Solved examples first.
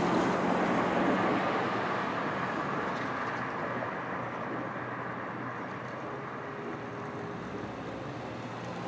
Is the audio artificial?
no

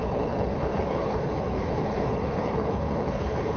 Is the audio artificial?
yes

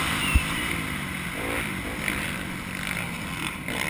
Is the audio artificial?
no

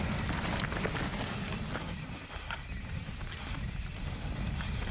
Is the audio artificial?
no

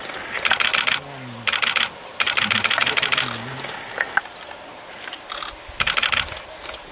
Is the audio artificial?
no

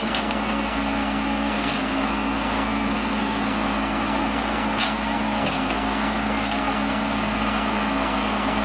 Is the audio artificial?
yes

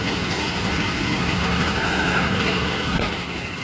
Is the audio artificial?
yes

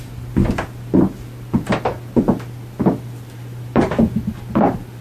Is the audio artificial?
no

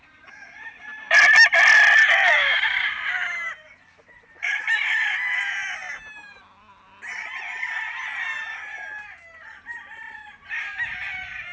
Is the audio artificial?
no